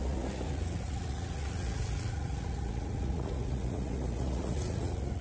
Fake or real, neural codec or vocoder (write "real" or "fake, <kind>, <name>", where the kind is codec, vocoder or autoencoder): fake, vocoder, Vocos